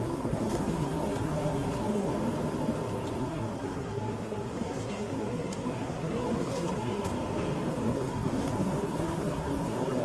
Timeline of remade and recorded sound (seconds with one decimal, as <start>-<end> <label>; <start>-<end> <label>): 0.0-2.1 remade; 2.1-3.2 recorded; 3.2-7.1 remade; 7.1-7.7 recorded; 7.7-10.0 remade